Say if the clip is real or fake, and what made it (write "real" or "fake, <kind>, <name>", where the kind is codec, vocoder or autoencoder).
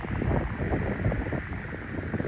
real